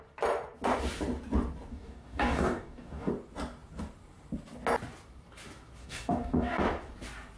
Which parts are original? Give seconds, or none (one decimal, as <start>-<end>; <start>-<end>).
0.0-1.7; 3.1-5.8; 6.6-7.4